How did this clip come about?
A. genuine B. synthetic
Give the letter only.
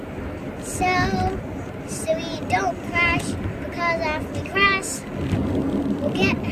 A